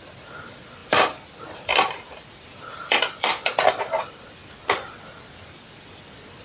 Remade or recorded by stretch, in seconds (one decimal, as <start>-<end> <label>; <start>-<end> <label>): 0.0-4.4 remade; 4.4-5.4 recorded; 5.4-6.4 remade